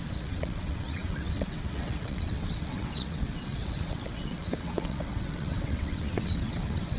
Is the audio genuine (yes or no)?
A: no